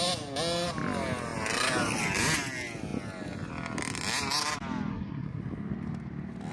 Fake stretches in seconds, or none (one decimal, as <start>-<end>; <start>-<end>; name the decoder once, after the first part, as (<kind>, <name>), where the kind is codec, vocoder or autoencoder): 4.9-5.4 (codec, SNAC)